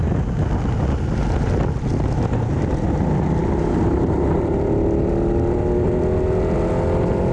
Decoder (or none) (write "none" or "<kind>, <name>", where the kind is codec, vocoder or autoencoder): none